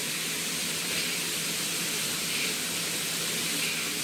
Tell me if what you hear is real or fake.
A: fake